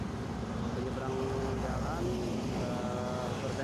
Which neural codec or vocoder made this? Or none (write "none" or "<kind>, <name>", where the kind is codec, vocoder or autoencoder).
none